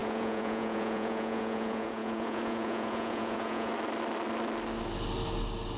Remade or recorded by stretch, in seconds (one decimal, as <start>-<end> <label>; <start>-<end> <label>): 0.0-3.7 remade; 3.7-5.8 recorded